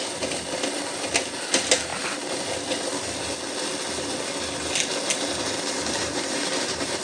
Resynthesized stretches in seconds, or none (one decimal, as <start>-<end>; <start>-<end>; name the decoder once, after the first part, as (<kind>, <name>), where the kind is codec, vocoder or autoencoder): 6.0-7.0 (vocoder, BigVGAN v2)